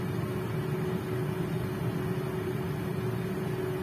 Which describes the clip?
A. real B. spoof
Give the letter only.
A